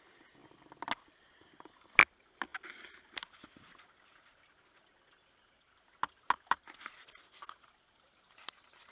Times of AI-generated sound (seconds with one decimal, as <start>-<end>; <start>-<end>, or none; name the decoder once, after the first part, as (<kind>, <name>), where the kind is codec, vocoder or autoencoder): none